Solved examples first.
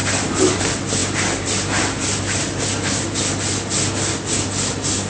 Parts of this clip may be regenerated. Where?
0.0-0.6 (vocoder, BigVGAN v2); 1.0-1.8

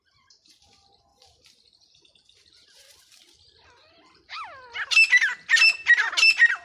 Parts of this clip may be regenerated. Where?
none

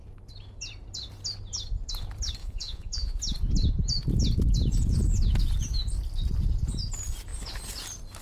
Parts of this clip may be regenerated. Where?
2.4-3.2 (vocoder, Vocos)

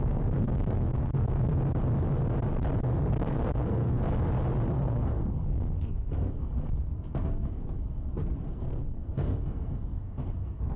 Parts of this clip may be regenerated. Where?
0.0-1.5 (codec, SNAC); 3.1-4.0; 4.7-10.8

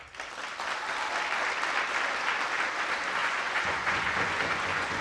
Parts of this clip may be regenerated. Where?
3.2-5.0 (vocoder, Vocos)

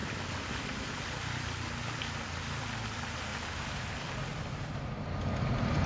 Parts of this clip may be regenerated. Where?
none

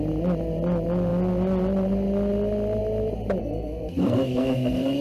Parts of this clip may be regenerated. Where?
3.4-5.0 (codec, SNAC)